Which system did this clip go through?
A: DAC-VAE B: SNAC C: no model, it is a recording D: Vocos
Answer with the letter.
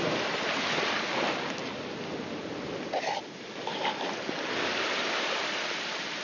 C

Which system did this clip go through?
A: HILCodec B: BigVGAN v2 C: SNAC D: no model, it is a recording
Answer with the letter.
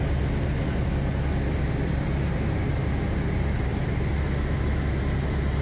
D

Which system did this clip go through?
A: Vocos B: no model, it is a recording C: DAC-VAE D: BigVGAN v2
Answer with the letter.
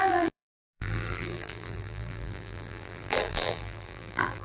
D